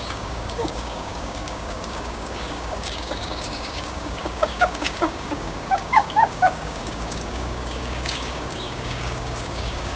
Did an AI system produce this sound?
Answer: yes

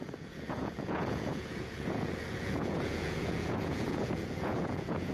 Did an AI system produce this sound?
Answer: yes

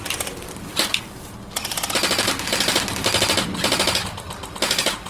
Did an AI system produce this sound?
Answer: no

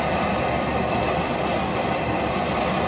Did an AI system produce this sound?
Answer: no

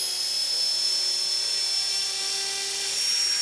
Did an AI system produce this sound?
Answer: no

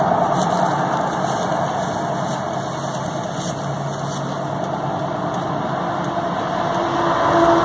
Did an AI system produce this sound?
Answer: no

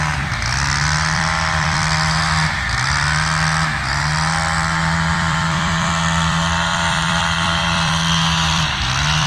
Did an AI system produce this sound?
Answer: yes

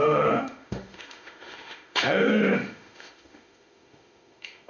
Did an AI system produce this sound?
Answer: yes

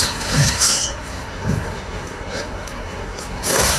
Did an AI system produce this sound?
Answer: yes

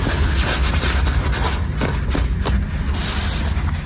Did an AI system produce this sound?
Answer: no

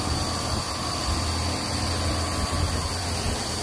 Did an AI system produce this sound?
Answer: no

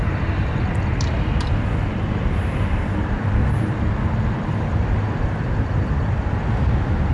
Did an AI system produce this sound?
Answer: no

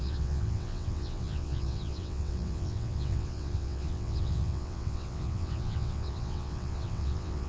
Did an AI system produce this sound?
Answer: yes